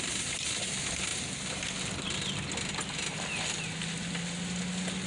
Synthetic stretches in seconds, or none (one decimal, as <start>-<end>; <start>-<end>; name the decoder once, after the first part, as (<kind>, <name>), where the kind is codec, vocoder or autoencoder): none